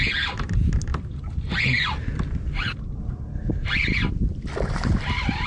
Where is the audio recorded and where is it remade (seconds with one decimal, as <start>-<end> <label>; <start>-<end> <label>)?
0.0-0.9 recorded; 0.9-3.0 remade; 3.0-5.5 recorded